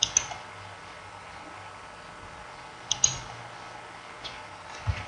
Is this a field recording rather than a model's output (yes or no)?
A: yes